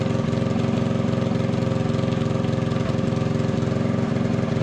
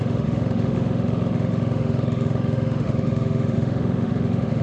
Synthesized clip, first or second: second